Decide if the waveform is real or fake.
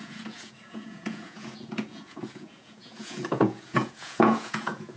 fake